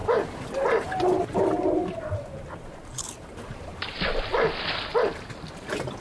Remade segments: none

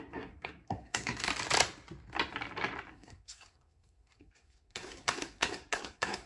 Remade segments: 0.0-1.3 (codec, SNAC); 2.9-6.3

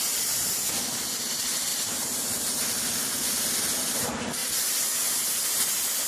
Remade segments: 1.7-2.7 (vocoder, BigVGAN v2); 4.4-5.1

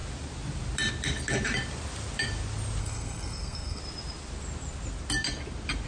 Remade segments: 2.8-3.8 (codec, SNAC)

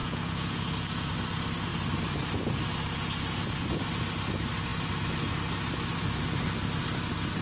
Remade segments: 0.0-1.1 (vocoder, Vocos)

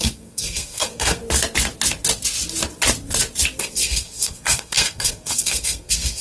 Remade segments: 0.0-1.2 (codec, SNAC); 3.6-6.2

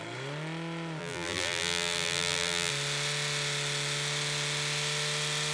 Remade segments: 1.0-2.7 (vocoder, BigVGAN v2)

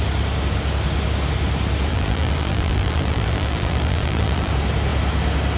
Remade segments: 1.9-4.5 (vocoder, BigVGAN v2)